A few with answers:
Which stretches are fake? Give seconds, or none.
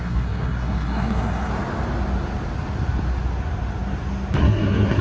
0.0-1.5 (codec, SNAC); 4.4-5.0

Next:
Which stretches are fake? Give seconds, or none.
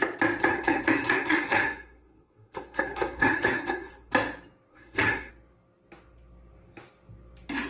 0.5-4.1 (codec, SNAC); 4.7-5.3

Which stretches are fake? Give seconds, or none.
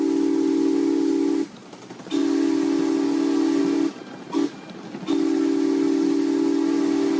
none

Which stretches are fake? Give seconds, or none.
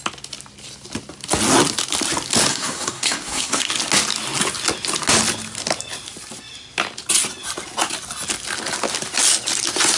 2.5-3.7 (codec, SNAC)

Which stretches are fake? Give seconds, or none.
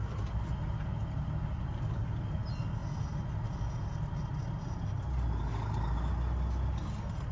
none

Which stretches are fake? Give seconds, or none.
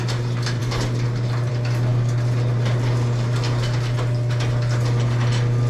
none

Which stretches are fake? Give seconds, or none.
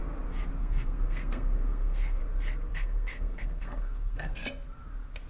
0.6-2.2 (codec, SNAC); 2.7-4.4